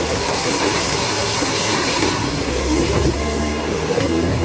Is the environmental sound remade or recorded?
remade